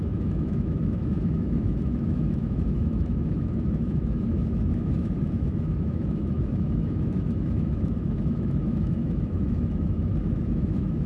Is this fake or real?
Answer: fake